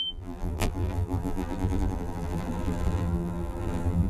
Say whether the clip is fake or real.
fake